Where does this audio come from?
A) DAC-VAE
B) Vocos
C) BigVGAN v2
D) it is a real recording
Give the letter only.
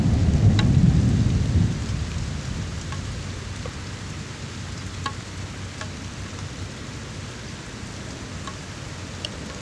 D